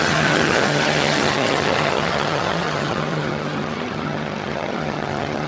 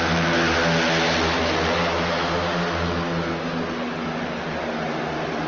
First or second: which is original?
second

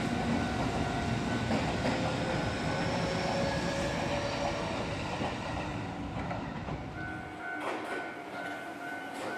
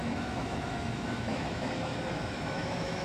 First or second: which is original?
first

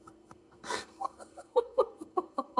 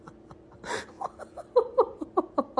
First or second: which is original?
second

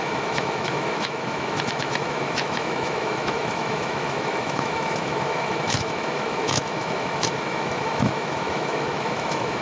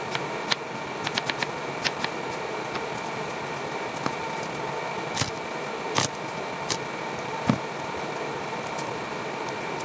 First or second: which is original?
second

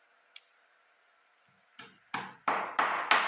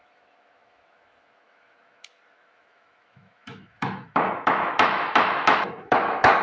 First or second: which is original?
first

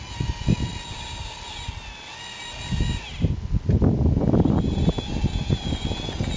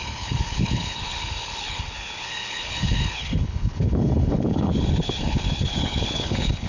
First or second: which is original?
first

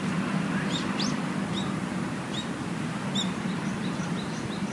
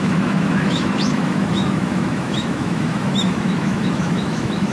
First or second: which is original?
first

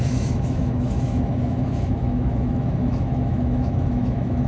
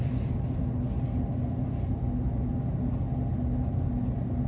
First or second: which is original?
second